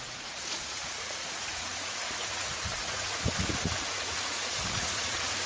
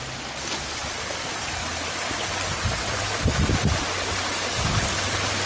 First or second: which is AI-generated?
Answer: first